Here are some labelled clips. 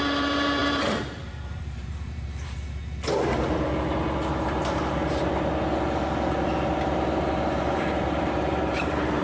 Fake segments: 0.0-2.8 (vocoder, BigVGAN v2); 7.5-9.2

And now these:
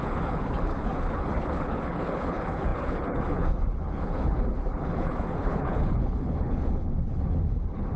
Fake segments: 0.0-8.0 (codec, HILCodec)

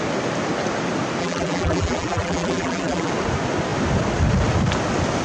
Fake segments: 1.2-3.1 (vocoder, BigVGAN v2)